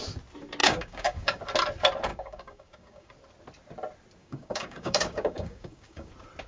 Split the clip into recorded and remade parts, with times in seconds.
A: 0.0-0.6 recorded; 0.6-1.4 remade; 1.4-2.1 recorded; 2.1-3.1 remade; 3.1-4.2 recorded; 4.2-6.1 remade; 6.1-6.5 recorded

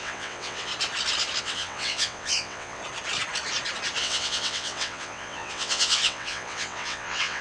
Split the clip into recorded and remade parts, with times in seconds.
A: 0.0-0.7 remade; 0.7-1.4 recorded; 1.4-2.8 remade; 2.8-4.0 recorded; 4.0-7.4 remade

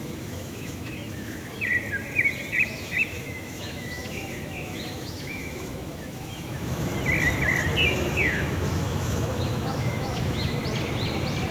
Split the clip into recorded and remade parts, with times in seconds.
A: 0.0-1.7 remade; 1.7-2.6 recorded; 2.6-6.9 remade; 6.9-7.9 recorded; 7.9-10.6 remade; 10.6-11.5 recorded